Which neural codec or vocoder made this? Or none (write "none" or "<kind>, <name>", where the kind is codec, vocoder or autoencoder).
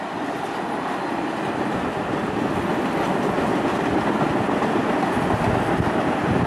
none